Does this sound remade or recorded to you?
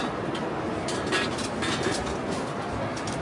recorded